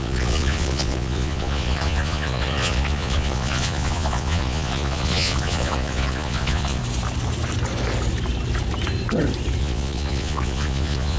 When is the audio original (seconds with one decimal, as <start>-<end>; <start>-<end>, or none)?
6.8-9.6